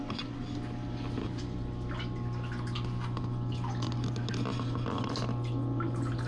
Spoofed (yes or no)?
no